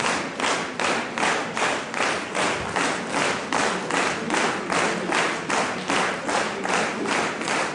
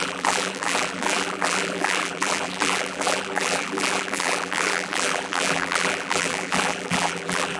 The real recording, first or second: first